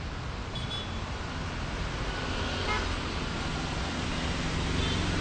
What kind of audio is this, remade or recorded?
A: recorded